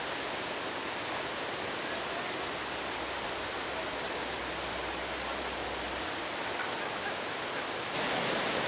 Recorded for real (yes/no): yes